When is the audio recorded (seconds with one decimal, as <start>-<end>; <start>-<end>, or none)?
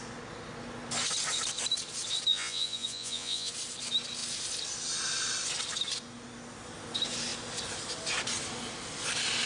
0.0-2.3; 3.5-9.5